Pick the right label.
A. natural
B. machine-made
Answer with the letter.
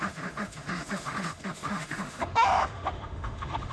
B